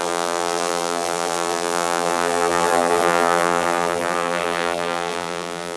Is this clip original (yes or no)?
no